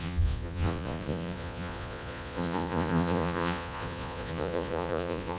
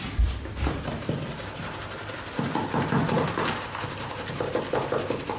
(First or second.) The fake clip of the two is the first